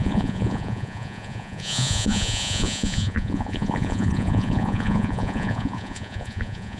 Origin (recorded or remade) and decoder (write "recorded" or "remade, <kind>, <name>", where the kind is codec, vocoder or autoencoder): remade, vocoder, Vocos